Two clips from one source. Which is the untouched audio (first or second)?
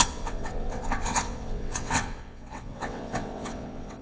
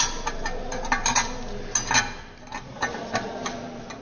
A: second